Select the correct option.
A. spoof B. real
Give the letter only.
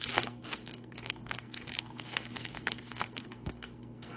A